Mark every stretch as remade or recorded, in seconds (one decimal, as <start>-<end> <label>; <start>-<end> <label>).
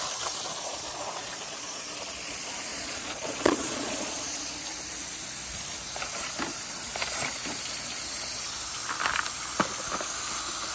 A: 0.0-0.5 recorded; 0.5-1.8 remade; 1.8-2.7 recorded; 2.7-4.4 remade; 4.4-10.7 recorded